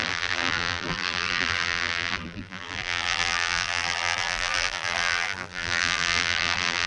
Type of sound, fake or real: fake